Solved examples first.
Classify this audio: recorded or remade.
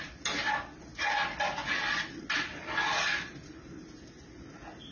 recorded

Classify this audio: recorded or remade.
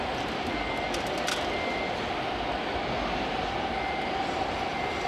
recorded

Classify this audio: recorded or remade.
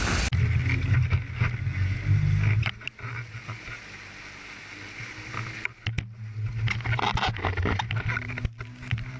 recorded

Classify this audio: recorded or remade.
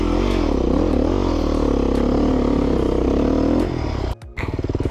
recorded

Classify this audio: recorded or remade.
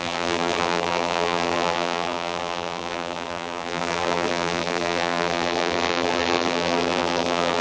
remade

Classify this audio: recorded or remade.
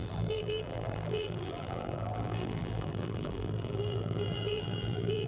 remade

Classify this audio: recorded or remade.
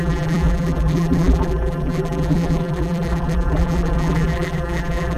remade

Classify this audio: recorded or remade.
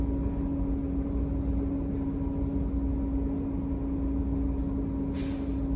recorded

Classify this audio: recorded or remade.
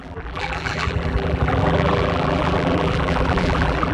remade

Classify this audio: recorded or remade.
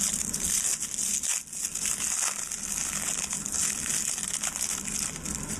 recorded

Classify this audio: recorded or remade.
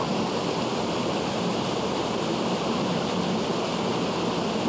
recorded